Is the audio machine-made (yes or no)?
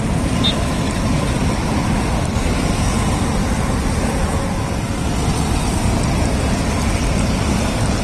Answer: no